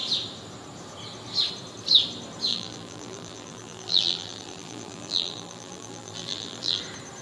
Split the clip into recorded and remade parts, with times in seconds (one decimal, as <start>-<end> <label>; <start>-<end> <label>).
0.0-2.5 recorded; 2.5-6.8 remade; 6.8-7.2 recorded